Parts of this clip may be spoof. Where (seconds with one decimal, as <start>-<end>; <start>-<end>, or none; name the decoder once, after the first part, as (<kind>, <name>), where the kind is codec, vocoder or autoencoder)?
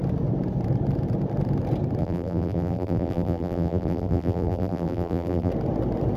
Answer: 2.0-5.5 (vocoder, BigVGAN v2)